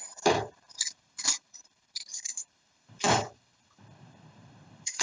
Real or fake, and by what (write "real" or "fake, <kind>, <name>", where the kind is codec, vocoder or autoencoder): fake, vocoder, BigVGAN v2